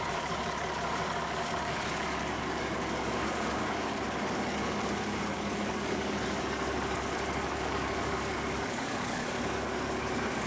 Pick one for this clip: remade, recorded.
remade